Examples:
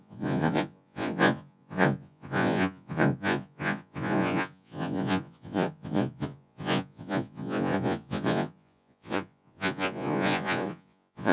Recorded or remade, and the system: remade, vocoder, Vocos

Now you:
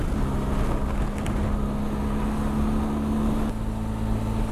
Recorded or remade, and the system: recorded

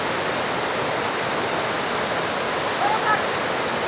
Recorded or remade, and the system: recorded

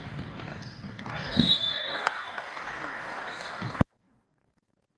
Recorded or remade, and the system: remade, codec, DAC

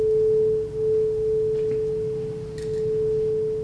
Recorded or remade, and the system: recorded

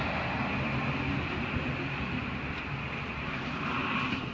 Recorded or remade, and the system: recorded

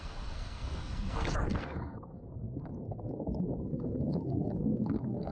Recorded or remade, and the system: remade, codec, SNAC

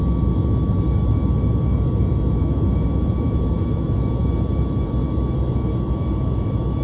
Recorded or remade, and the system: remade, autoencoder, DAC-VAE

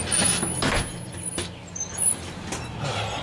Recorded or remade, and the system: recorded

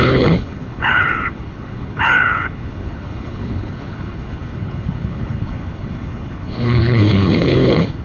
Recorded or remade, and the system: remade, codec, HILCodec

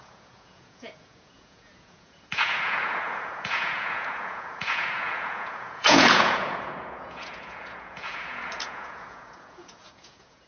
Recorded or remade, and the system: remade, vocoder, Vocos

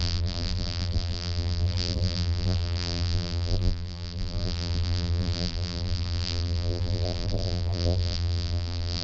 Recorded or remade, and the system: remade, vocoder, BigVGAN v2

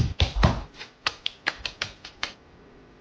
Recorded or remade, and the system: remade, vocoder, BigVGAN v2